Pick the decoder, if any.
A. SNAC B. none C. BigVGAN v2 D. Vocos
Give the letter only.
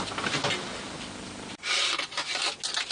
B